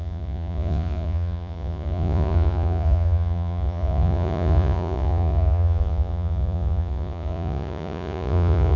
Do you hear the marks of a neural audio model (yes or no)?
yes